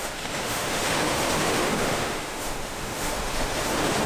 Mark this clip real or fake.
fake